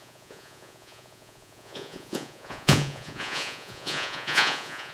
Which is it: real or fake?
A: fake